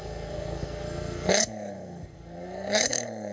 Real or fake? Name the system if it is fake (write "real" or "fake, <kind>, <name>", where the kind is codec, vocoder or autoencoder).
fake, codec, SNAC